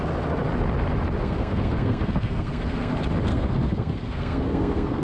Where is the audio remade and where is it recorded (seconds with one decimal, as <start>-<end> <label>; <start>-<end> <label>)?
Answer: 0.0-1.2 recorded; 1.2-2.9 remade; 2.9-3.3 recorded; 3.3-5.0 remade